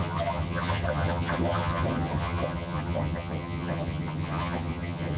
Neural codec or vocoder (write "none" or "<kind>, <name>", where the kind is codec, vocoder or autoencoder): vocoder, HiFi-GAN